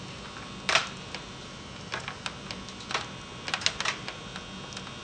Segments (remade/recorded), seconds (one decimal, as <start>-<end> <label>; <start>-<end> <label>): 0.0-5.0 recorded